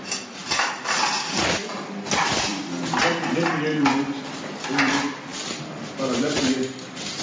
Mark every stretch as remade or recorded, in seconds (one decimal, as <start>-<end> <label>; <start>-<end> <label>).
0.0-7.2 recorded